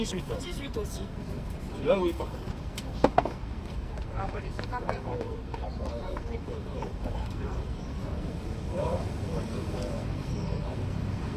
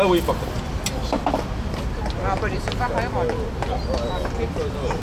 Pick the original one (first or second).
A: second